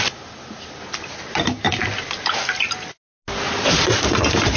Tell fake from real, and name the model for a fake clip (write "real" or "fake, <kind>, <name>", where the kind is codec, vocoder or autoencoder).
real